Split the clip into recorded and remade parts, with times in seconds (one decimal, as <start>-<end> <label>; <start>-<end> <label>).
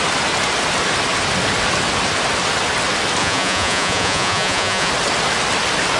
0.0-3.2 recorded; 3.2-4.9 remade; 4.9-6.0 recorded